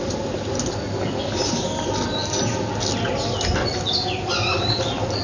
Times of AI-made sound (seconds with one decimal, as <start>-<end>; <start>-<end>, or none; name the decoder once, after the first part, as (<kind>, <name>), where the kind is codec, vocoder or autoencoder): none